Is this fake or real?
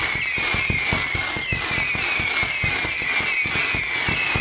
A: real